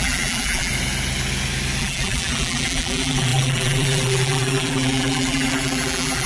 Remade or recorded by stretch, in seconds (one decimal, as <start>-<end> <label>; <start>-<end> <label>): 0.0-0.7 remade; 0.7-1.8 recorded; 1.8-6.3 remade